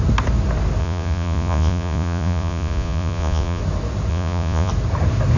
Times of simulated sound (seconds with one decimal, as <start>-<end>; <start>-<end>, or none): 0.8-3.6; 4.1-4.7